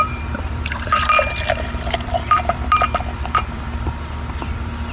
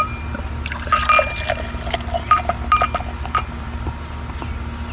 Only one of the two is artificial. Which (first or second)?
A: first